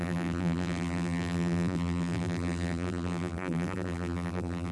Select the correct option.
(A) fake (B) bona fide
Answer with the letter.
A